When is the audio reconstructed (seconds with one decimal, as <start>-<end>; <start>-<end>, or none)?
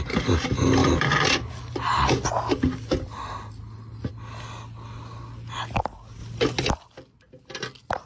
none